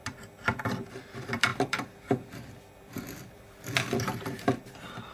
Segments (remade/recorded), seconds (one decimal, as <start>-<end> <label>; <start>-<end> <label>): 0.0-1.5 recorded; 1.5-4.6 remade; 4.6-5.1 recorded